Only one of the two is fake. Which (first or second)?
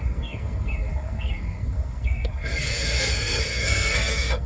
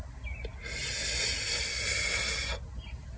first